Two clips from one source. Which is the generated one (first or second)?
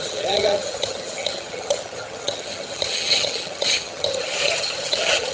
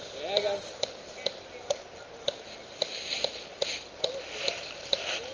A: first